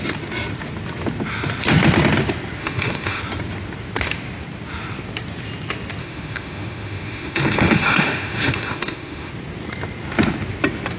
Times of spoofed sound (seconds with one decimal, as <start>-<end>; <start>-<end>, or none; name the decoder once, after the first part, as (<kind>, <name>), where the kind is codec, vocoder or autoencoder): 2.6-3.2 (autoencoder, DAC-VAE); 6.0-9.3